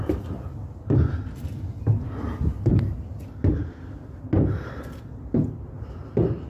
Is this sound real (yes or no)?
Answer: yes